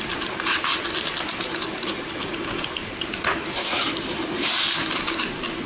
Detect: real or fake real